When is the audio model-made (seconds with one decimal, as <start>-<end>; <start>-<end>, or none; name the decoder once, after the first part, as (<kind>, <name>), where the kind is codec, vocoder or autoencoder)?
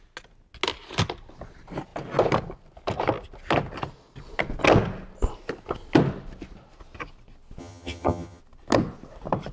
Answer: 7.6-8.4 (vocoder, HiFi-GAN)